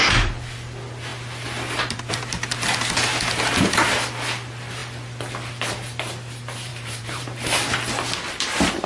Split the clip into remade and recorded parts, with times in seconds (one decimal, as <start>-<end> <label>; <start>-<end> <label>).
0.0-6.7 recorded; 6.7-7.5 remade; 7.5-8.9 recorded